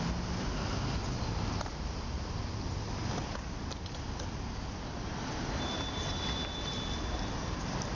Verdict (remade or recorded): recorded